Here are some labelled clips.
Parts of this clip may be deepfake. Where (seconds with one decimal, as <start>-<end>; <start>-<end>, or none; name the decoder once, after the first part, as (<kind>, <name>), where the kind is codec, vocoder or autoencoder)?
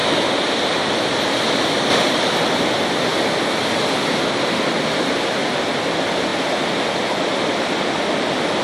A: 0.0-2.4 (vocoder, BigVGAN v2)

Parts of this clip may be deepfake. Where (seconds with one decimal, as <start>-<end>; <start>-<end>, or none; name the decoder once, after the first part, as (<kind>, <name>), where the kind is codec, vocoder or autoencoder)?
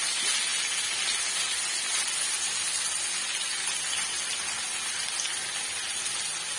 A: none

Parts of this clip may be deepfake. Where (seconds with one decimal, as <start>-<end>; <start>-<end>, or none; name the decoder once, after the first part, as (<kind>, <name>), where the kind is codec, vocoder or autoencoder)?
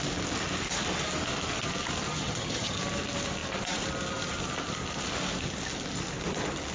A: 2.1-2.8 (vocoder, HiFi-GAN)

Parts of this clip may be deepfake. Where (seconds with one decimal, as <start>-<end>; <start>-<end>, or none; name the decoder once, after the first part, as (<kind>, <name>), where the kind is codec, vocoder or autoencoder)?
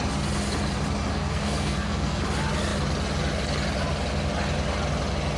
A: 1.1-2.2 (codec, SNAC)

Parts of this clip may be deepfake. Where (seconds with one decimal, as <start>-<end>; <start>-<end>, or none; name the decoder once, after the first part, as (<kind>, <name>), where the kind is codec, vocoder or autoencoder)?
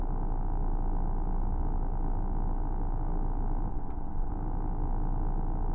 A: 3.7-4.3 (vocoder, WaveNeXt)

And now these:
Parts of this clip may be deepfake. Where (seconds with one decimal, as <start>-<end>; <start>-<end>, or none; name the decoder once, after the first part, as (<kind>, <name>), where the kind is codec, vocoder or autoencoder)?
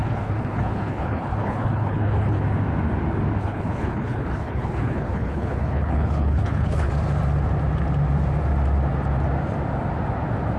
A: 0.0-2.4 (codec, HILCodec); 3.4-6.9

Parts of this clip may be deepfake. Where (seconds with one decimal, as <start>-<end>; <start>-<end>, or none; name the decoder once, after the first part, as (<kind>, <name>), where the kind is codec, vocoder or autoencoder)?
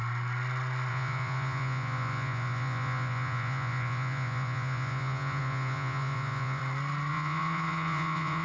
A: 0.9-6.6 (vocoder, Vocos); 7.1-8.4